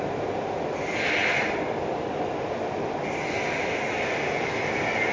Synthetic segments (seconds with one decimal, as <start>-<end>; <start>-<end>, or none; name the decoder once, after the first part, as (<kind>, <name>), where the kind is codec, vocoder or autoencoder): none